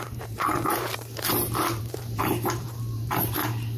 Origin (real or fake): fake